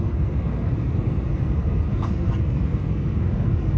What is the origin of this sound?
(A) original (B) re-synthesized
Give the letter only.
B